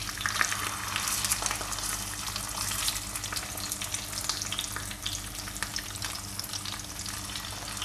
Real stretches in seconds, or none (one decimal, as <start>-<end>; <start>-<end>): 0.0-7.8